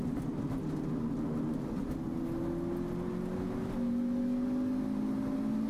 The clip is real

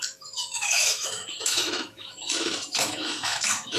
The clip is fake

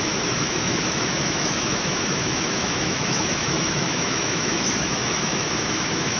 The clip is fake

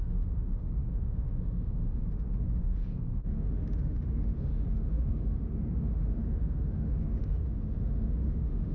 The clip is fake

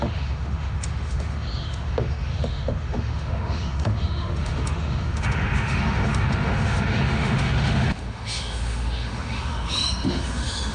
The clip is fake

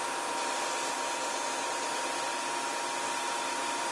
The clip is real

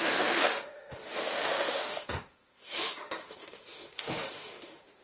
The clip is fake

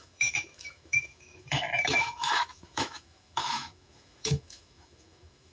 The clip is fake